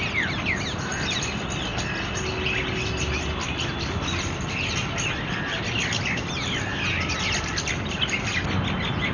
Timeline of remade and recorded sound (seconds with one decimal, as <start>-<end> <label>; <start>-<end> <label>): 0.0-9.1 recorded